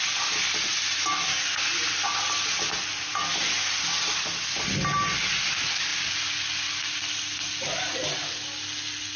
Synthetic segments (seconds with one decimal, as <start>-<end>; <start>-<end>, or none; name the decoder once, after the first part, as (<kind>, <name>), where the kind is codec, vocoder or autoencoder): none